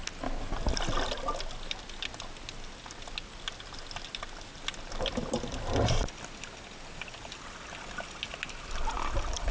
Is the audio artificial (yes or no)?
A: no